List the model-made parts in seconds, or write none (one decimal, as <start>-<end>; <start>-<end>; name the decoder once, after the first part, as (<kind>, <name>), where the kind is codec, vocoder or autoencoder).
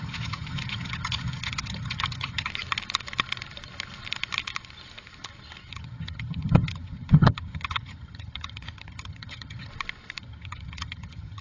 0.0-2.5 (vocoder, HiFi-GAN); 5.7-9.7; 10.2-11.4